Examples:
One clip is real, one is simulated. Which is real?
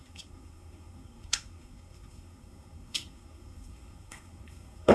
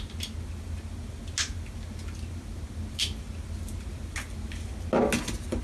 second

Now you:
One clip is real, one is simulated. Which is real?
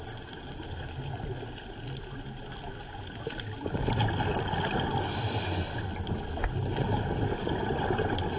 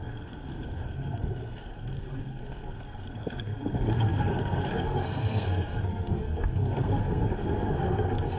first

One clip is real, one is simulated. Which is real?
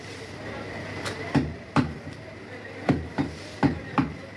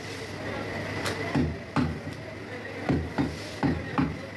second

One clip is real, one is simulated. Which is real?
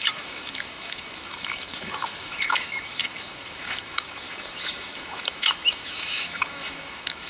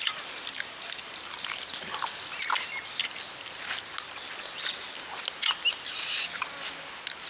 second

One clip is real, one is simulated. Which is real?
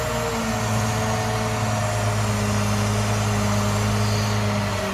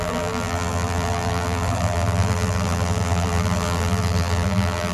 first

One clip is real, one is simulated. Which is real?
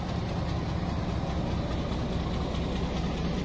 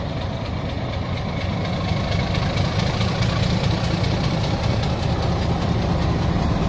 first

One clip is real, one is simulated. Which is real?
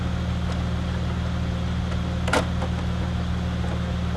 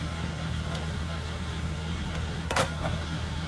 first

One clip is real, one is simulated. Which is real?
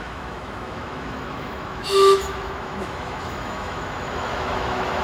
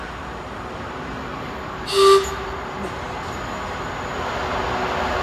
second